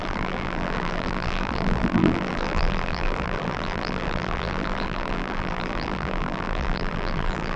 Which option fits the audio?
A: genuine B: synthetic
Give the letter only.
B